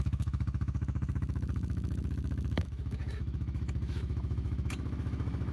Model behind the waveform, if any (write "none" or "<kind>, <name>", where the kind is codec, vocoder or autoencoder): autoencoder, DAC-VAE